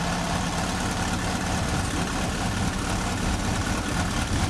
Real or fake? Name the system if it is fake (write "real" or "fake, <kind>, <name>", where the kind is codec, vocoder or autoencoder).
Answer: real